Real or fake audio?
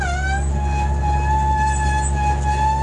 real